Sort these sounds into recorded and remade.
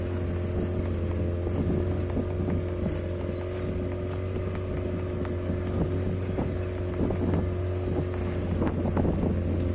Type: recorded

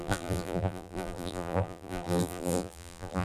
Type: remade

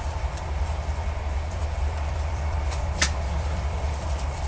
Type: remade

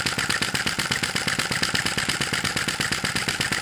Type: recorded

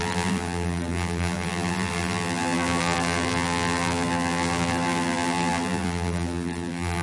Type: remade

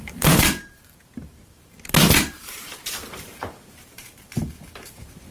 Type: remade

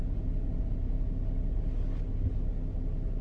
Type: recorded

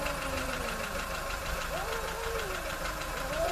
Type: remade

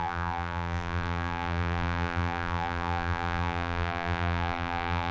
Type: remade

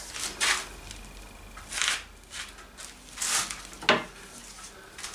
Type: recorded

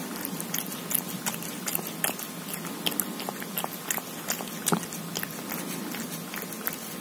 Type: recorded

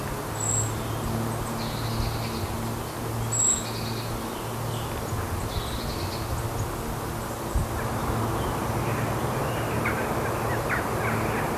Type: recorded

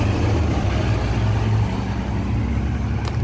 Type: recorded